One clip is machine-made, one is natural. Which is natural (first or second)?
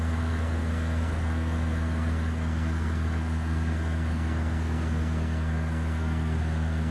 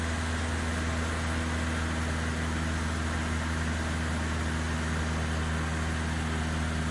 second